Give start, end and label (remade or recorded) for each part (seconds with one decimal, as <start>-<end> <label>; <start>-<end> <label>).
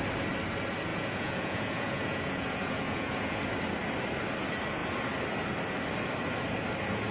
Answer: 0.0-0.9 recorded; 0.9-3.4 remade; 3.4-7.1 recorded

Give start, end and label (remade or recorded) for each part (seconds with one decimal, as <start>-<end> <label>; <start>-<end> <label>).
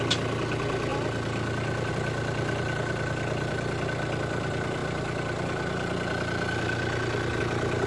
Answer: 0.0-7.9 recorded